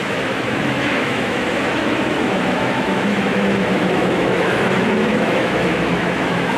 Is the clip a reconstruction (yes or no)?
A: yes